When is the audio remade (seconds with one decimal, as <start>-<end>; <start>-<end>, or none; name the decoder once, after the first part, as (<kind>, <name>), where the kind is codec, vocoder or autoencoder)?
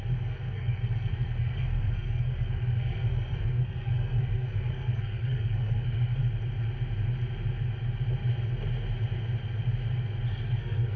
0.0-6.2 (codec, SNAC); 10.3-11.0